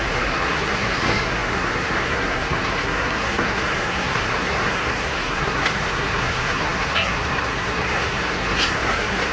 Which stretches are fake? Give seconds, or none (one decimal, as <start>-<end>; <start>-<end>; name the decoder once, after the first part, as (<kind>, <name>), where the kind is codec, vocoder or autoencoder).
0.0-9.3 (codec, SNAC)